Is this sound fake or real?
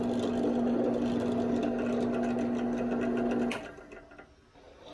real